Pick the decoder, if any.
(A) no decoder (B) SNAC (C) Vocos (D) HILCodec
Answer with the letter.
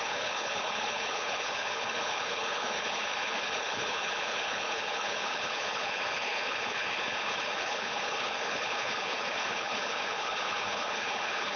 D